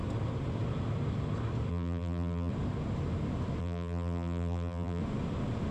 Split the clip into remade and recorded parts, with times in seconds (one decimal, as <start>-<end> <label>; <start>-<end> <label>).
0.0-1.7 recorded; 1.7-2.5 remade; 2.5-3.6 recorded; 3.6-5.0 remade; 5.0-5.7 recorded